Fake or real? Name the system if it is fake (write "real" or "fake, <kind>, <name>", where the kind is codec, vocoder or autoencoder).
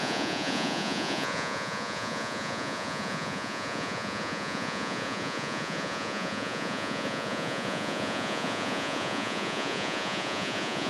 fake, vocoder, Vocos